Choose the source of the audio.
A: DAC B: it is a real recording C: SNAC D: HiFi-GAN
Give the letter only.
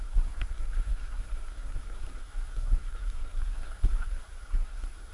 C